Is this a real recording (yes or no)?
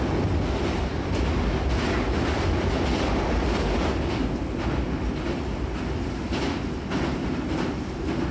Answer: yes